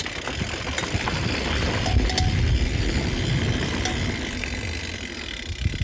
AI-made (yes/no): no